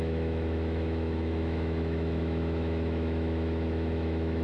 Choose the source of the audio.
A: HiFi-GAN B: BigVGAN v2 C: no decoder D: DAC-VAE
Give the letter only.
D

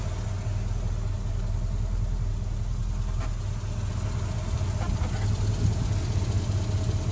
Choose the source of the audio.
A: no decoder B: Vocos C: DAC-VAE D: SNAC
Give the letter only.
A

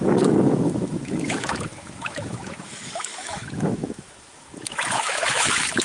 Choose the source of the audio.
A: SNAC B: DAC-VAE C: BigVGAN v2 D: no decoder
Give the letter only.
B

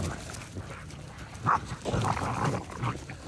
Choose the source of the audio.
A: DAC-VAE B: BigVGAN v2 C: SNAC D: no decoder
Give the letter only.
D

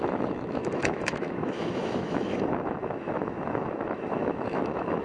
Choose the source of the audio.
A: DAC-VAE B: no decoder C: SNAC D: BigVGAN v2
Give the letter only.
A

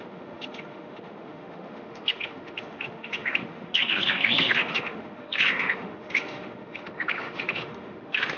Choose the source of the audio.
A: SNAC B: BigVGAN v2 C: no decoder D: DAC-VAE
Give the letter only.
D